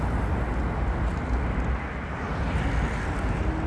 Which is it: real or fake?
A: real